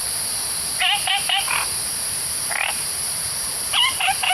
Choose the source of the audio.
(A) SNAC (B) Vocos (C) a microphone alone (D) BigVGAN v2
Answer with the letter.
D